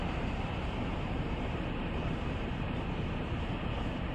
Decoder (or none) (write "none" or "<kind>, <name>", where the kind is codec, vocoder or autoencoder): vocoder, BigVGAN v2